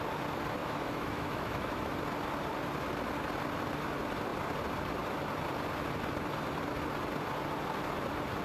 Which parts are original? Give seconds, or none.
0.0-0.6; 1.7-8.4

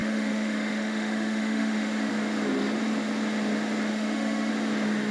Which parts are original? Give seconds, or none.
2.1-3.9; 4.5-5.1

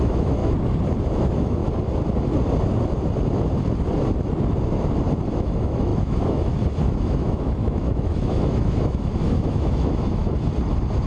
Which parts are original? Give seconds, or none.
0.4-1.0; 1.6-5.3; 10.2-11.1